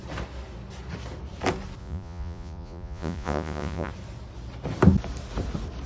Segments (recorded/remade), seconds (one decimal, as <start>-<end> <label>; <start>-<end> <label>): 0.0-1.8 recorded; 1.8-3.9 remade; 3.9-5.9 recorded